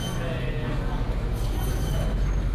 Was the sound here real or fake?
real